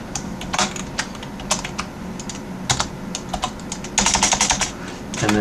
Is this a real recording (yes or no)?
yes